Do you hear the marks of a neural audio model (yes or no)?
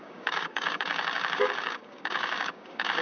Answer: yes